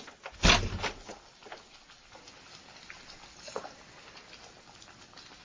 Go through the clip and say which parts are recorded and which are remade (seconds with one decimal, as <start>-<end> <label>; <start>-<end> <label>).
0.0-5.4 recorded